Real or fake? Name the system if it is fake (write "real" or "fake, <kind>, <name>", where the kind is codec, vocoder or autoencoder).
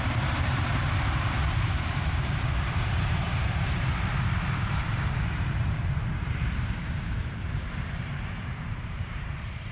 fake, vocoder, BigVGAN v2